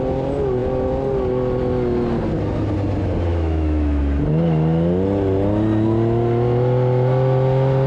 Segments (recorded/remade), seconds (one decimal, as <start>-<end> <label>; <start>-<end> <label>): 0.0-3.3 recorded; 3.3-4.0 remade; 4.0-7.9 recorded